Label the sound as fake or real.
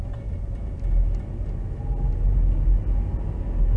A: real